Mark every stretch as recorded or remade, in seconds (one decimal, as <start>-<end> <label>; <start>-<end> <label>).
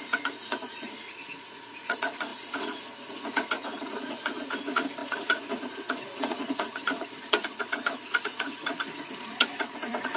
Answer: 0.0-10.2 remade